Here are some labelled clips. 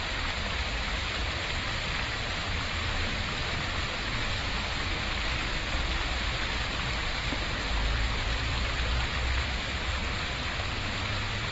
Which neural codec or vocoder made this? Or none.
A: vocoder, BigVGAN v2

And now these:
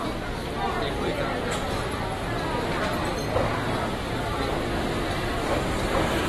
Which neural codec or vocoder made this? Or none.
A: none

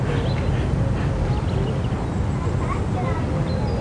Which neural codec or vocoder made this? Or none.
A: none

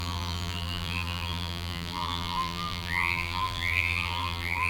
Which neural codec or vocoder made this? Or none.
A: vocoder, BigVGAN v2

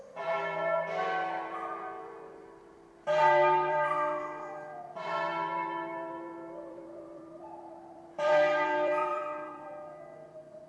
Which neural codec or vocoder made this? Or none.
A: vocoder, BigVGAN v2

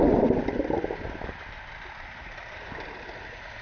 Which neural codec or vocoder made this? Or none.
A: none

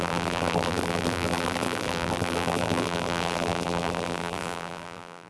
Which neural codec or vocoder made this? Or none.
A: vocoder, BigVGAN v2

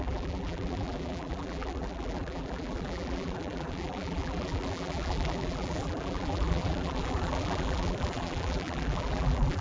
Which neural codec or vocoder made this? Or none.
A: vocoder, BigVGAN v2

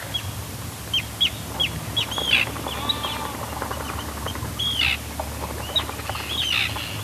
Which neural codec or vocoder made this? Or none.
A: none